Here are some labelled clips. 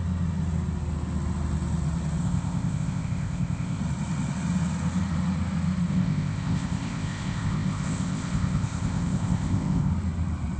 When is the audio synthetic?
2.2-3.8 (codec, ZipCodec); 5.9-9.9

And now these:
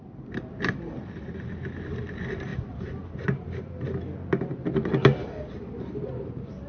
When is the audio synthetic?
none

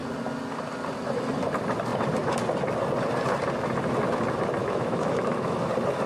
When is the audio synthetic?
4.6-5.6 (autoencoder, DAC-VAE)

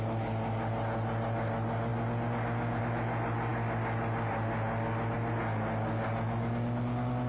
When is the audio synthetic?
none